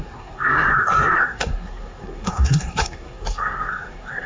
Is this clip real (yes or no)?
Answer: no